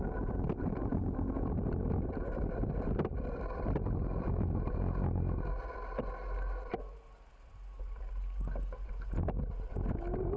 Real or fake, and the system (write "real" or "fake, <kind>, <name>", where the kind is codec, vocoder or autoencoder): real